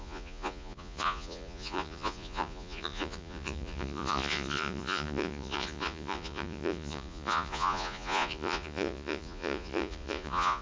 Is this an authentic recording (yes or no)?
no